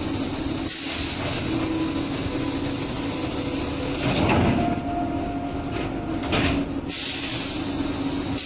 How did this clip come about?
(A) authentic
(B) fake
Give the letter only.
A